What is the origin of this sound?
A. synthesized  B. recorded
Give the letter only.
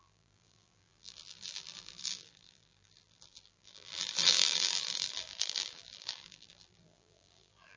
A